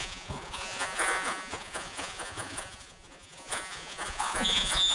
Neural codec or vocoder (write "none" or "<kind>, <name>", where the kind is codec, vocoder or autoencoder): vocoder, Vocos